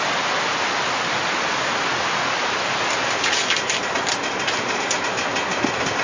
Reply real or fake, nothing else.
real